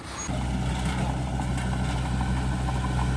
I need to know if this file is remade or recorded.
recorded